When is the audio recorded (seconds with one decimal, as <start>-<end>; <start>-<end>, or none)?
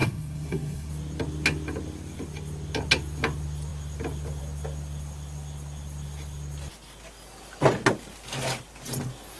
0.9-9.4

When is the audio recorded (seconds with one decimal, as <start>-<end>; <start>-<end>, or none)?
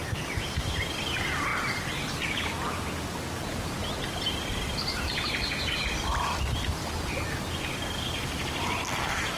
0.0-9.4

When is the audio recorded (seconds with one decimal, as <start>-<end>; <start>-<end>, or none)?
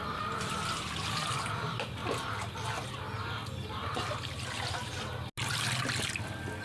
2.0-6.0